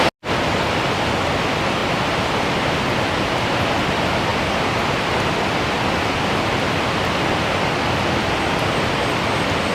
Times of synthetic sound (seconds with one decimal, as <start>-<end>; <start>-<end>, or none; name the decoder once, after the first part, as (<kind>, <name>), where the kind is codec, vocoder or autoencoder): none

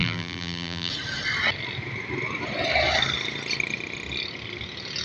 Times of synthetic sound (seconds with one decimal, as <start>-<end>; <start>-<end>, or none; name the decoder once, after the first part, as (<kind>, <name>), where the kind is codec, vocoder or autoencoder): 0.0-0.9 (vocoder, BigVGAN v2)